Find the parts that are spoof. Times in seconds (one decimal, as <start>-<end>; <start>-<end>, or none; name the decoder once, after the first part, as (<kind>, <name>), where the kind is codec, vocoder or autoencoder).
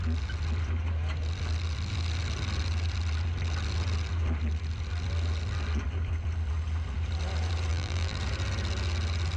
7.7-8.2 (vocoder, BigVGAN v2)